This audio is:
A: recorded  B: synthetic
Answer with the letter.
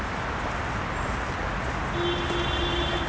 A